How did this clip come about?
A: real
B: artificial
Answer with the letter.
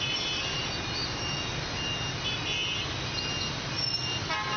A